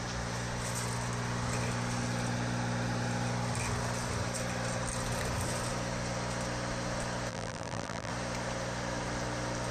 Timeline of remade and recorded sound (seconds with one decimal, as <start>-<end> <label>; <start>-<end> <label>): 0.0-7.3 recorded; 7.3-8.1 remade; 8.1-9.7 recorded